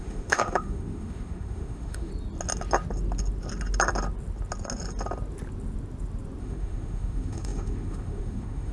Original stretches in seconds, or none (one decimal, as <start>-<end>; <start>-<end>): 2.1-6.4